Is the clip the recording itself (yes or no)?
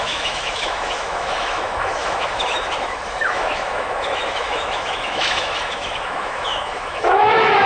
no